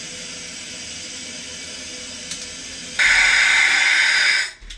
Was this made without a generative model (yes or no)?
yes